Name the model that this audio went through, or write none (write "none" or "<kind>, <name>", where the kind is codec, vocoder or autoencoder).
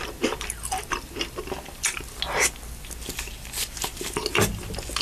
none